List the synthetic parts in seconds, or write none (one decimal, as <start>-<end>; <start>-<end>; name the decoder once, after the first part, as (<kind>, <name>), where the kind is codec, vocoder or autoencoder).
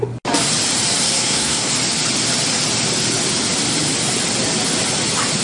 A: 1.0-1.7 (codec, SNAC)